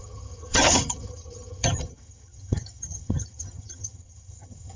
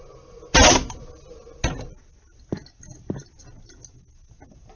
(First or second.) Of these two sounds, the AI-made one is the first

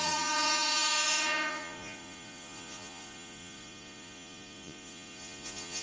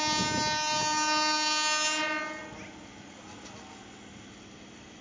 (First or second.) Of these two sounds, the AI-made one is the first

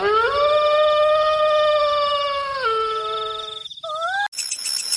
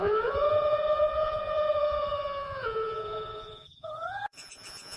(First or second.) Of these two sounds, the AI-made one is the second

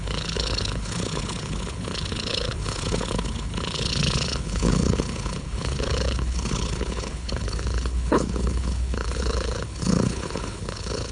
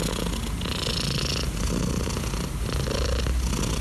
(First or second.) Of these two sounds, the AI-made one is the first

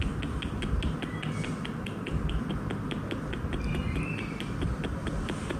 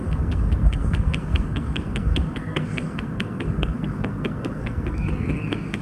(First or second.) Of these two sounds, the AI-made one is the second